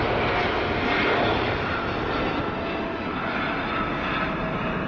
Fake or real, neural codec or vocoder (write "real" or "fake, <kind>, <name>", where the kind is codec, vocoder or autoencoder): real